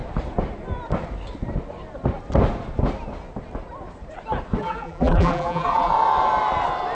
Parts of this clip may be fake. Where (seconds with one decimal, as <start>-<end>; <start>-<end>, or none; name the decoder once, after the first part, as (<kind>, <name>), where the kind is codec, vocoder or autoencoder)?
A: 4.6-5.9 (vocoder, BigVGAN v2)